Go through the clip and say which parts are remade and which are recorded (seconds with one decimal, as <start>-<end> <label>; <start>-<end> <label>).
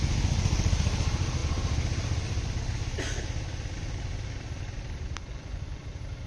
0.0-5.3 recorded; 5.3-5.8 remade; 5.8-6.3 recorded